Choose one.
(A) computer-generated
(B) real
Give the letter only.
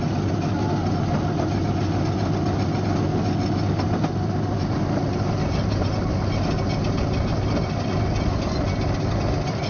B